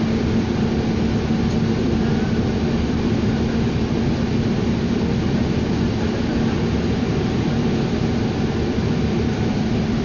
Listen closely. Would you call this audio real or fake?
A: real